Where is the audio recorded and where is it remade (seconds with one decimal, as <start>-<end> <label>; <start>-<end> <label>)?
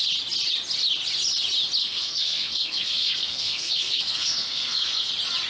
0.0-1.8 recorded; 1.8-5.1 remade; 5.1-5.5 recorded